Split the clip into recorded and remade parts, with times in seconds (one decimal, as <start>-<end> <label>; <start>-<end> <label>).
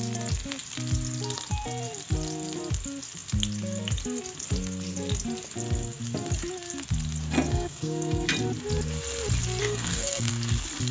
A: 0.0-7.5 recorded; 7.5-8.3 remade; 8.3-9.6 recorded; 9.6-10.3 remade; 10.3-10.9 recorded